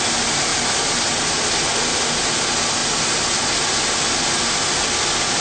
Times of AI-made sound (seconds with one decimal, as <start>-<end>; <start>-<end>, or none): none